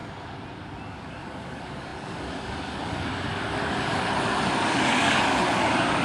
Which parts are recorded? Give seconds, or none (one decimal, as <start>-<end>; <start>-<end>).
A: 0.0-0.9